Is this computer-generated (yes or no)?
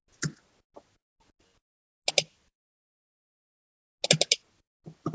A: no